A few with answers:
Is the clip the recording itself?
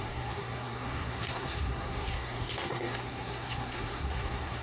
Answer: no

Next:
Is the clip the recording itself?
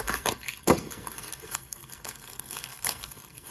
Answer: no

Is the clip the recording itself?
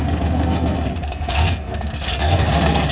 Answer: no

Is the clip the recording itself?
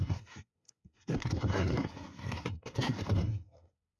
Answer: no